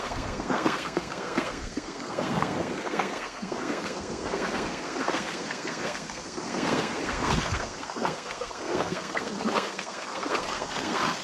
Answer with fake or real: fake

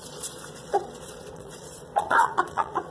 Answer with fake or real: fake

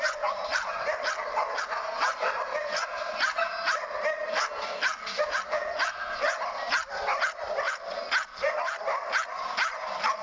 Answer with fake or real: real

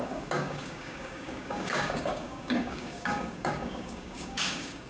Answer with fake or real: fake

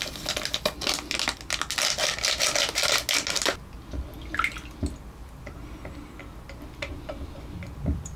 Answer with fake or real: real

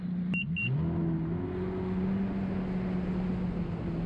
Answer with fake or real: real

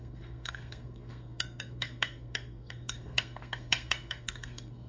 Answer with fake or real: fake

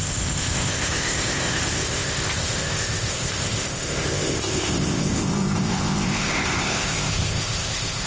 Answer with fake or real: fake